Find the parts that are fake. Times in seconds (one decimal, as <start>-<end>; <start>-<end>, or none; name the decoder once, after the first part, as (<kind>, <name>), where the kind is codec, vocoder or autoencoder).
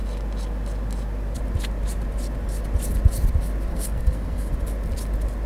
3.7-4.5 (codec, SNAC)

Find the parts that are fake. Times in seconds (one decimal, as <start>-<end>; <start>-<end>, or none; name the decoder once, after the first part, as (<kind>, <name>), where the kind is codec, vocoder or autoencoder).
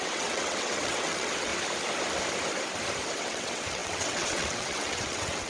0.0-1.5 (vocoder, WaveNeXt); 3.2-5.5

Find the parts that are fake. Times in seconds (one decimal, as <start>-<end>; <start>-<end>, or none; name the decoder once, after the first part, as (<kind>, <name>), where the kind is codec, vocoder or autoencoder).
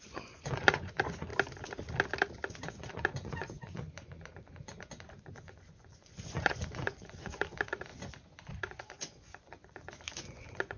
0.0-1.3 (vocoder, Vocos); 2.5-7.9; 8.5-10.8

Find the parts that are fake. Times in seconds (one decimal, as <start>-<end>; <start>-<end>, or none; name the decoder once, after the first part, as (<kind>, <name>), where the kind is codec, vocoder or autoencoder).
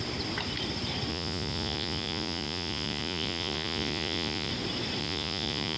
1.1-4.5 (vocoder, Vocos); 5.0-5.8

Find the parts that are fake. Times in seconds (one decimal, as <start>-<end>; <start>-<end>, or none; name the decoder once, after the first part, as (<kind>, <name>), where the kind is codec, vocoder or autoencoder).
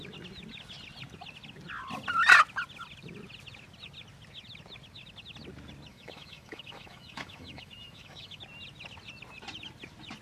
5.9-8.4 (autoencoder, DAC-VAE)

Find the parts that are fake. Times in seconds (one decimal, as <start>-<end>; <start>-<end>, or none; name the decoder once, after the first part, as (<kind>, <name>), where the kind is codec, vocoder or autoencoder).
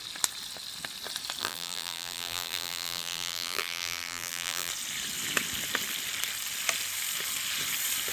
1.4-4.7 (vocoder, BigVGAN v2)